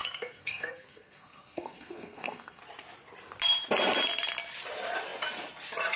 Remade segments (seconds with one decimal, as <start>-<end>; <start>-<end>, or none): 0.0-2.6